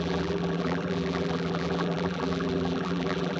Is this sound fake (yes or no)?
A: yes